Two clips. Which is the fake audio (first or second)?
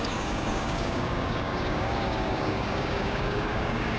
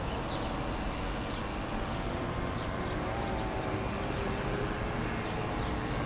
first